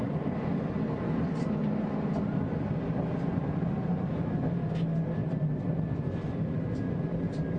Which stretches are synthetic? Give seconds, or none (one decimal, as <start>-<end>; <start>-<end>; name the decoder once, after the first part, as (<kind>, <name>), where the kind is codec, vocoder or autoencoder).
none